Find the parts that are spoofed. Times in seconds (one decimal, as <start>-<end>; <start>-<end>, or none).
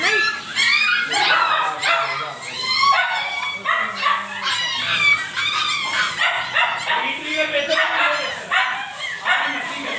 none